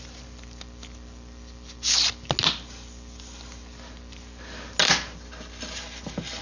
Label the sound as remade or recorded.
recorded